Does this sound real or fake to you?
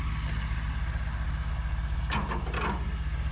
real